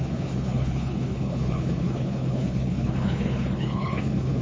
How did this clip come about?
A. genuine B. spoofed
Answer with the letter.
B